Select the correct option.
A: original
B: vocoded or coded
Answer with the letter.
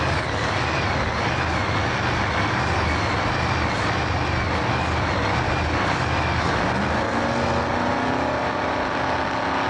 A